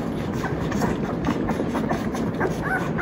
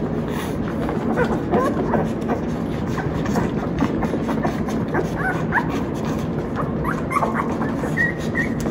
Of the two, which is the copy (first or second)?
first